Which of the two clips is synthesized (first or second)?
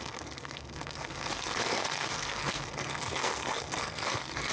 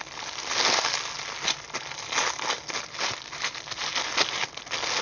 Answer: first